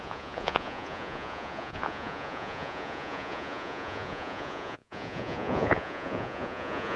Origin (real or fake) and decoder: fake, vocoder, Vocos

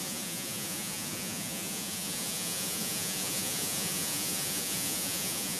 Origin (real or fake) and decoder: fake, vocoder, Vocos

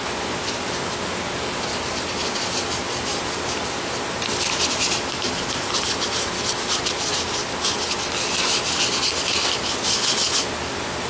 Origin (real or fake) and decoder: real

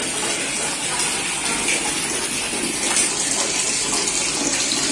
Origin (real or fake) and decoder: real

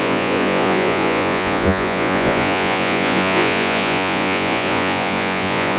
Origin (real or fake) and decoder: fake, vocoder, Vocos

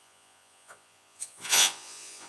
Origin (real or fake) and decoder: fake, vocoder, Vocos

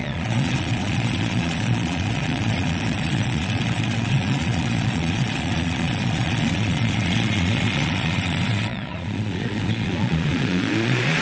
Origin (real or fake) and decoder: fake, vocoder, Vocos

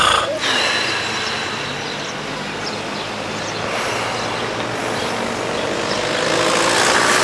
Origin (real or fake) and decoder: real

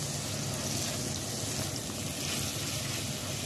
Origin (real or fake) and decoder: real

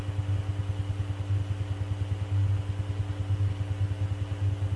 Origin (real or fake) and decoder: real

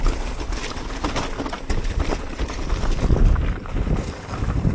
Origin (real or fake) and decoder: real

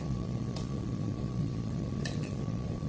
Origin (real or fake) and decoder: fake, vocoder, Vocos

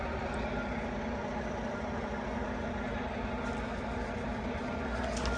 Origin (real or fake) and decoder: real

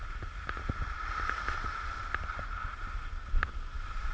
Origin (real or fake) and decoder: real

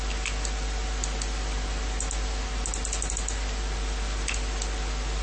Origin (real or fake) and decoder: real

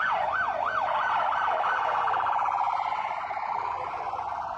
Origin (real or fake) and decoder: fake, vocoder, Vocos